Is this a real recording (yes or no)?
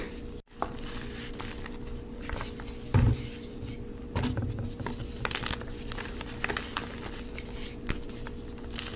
yes